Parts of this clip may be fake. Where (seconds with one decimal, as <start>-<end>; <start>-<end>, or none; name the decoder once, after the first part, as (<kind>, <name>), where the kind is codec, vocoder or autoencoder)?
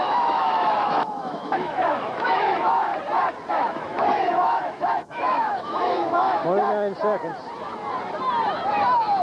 0.0-2.9 (autoencoder, DAC-VAE); 3.5-6.4